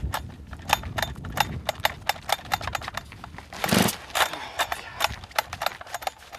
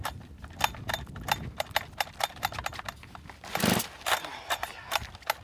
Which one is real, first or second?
first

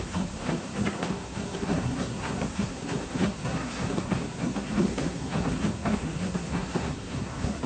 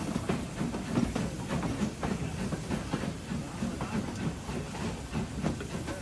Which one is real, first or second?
second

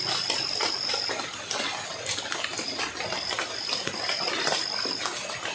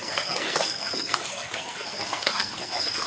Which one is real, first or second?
first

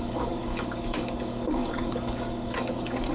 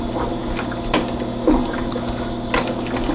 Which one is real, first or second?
second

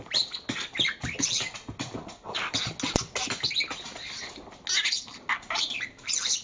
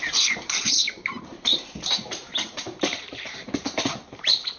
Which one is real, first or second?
first